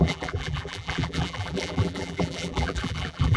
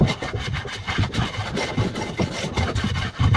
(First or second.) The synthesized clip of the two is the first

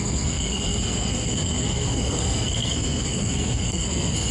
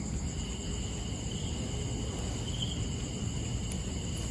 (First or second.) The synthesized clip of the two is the first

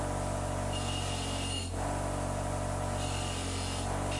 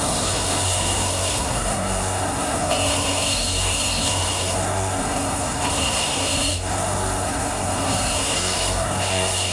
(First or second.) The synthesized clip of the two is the second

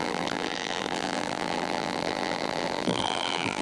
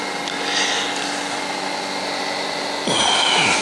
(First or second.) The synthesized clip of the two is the first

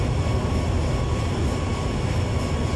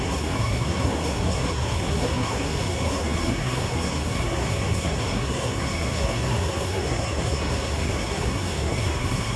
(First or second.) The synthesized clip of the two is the second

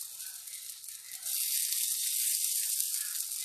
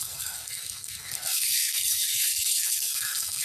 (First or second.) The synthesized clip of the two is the second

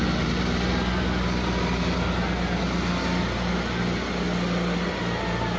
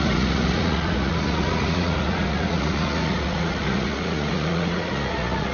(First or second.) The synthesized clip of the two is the second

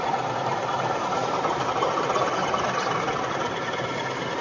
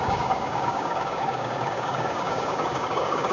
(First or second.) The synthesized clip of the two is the second